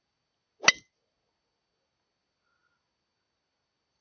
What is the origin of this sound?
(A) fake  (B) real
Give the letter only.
B